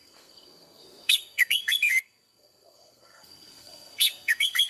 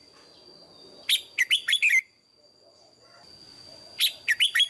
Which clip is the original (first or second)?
second